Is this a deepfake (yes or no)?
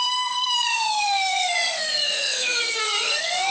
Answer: yes